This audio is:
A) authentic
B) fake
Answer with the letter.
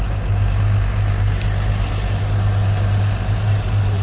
A